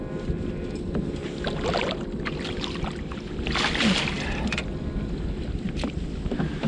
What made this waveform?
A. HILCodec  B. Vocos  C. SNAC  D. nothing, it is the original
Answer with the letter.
D